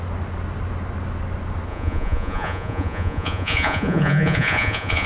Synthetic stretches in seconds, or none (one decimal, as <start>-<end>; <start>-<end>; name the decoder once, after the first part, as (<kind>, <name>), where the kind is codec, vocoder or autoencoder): 1.7-5.1 (vocoder, Vocos)